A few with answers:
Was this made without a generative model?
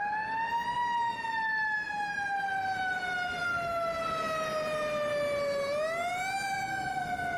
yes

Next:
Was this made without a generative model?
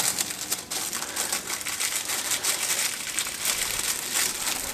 yes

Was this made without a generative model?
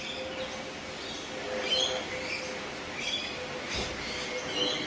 yes